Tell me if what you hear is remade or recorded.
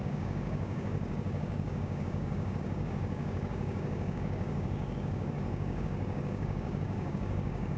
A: remade